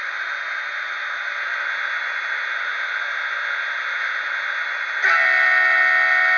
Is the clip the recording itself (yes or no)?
yes